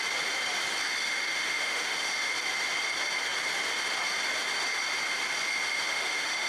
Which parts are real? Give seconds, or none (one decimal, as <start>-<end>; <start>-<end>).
0.0-1.0; 2.3-5.7